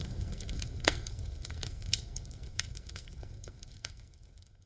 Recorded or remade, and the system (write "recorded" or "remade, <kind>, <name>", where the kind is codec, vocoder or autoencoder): remade, codec, SNAC